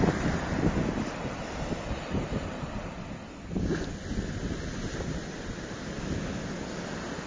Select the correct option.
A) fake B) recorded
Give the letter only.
B